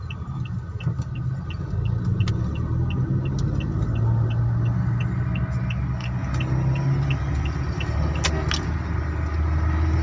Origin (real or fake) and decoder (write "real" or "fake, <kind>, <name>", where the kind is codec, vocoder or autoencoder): real